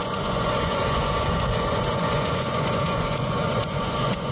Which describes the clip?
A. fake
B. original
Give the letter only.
A